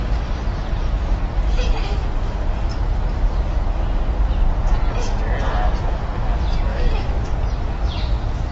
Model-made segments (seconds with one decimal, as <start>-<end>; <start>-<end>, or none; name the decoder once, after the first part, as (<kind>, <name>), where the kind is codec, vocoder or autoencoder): 6.7-7.3 (autoencoder, DAC-VAE)